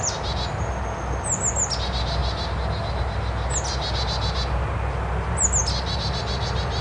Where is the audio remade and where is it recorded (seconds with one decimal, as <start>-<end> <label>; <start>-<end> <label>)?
0.0-6.8 recorded